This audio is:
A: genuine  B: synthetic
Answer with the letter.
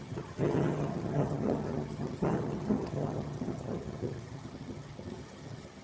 B